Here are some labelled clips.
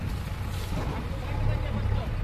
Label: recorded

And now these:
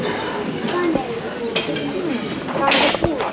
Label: recorded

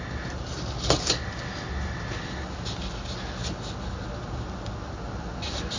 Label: recorded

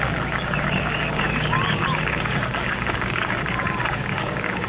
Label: remade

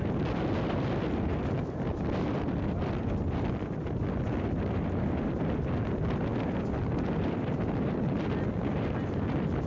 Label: recorded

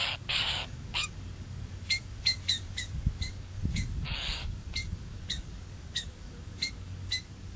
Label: remade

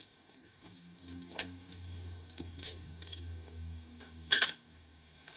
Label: remade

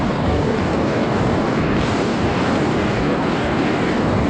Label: remade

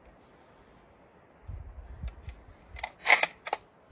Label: recorded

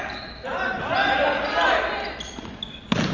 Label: recorded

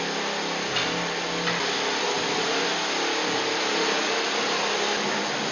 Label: recorded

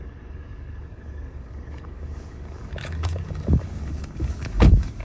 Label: remade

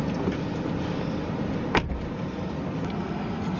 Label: recorded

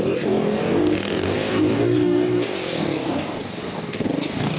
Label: remade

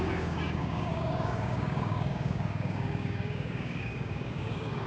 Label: remade